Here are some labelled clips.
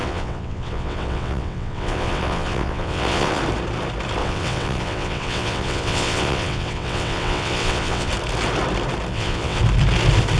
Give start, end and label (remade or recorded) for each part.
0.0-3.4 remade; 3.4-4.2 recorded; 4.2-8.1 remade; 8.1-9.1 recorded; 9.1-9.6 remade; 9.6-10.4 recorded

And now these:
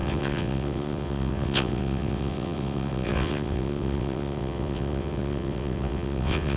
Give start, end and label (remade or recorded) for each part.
0.0-6.6 remade

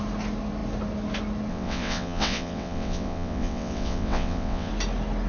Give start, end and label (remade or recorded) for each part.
0.0-1.5 recorded; 1.5-4.7 remade; 4.7-5.3 recorded

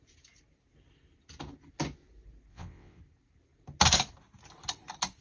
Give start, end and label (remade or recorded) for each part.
0.0-2.5 recorded; 2.5-3.0 remade; 3.0-5.2 recorded

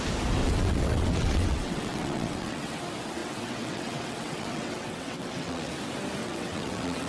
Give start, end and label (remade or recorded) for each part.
0.0-0.4 recorded; 0.4-2.8 remade; 2.8-3.2 recorded; 3.2-5.7 remade; 5.7-6.2 recorded; 6.2-7.1 remade

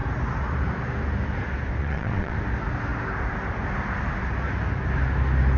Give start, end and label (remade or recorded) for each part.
0.0-1.8 recorded; 1.8-2.4 remade; 2.4-5.6 recorded

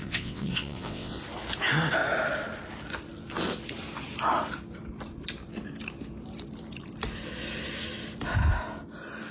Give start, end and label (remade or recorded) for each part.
0.0-1.2 remade; 1.2-9.3 recorded